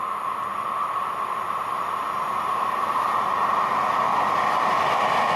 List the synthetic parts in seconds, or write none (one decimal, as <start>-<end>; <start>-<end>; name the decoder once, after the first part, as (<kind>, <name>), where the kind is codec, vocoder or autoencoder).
0.5-1.4 (vocoder, BigVGAN v2)